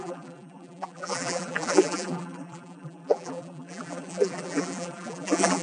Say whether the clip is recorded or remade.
remade